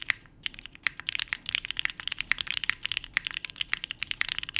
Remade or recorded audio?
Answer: remade